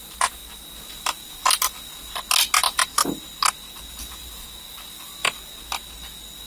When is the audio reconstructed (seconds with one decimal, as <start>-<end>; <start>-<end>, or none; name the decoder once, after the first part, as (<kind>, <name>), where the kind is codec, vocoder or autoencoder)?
0.0-0.4 (vocoder, BigVGAN v2); 4.2-5.2